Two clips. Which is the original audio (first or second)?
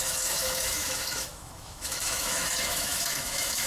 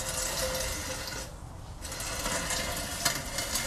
second